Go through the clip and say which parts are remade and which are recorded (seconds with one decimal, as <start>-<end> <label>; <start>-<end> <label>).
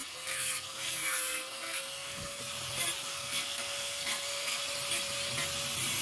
0.0-2.4 remade; 2.4-3.1 recorded; 3.1-4.6 remade; 4.6-6.0 recorded